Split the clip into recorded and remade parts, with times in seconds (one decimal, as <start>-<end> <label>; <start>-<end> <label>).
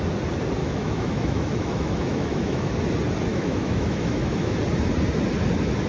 0.0-0.6 recorded; 0.6-2.7 remade; 2.7-3.3 recorded; 3.3-4.6 remade; 4.6-5.9 recorded